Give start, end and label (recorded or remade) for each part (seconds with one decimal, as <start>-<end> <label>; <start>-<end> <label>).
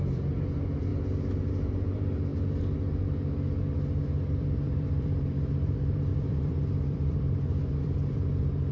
0.0-0.9 remade; 0.9-1.5 recorded; 1.5-2.3 remade; 2.3-4.3 recorded; 4.3-8.7 remade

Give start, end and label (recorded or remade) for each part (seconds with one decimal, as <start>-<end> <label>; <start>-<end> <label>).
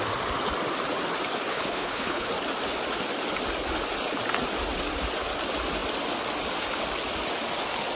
0.0-1.5 recorded; 1.5-2.3 remade; 2.3-8.0 recorded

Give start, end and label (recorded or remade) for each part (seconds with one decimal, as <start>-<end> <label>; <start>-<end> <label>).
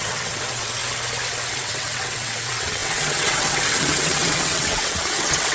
0.0-0.8 remade; 0.8-1.5 recorded; 1.5-5.5 remade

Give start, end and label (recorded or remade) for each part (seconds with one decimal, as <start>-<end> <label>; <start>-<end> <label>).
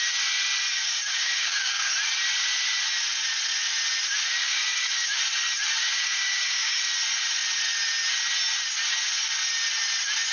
0.0-0.7 recorded; 0.7-1.9 remade; 1.9-4.4 recorded; 4.4-5.2 remade; 5.2-5.8 recorded; 5.8-6.8 remade; 6.8-10.3 recorded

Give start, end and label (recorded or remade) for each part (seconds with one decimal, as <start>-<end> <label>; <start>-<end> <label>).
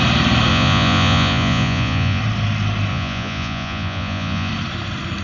0.0-0.5 recorded; 0.5-2.2 remade; 2.2-2.9 recorded; 2.9-4.5 remade; 4.5-5.2 recorded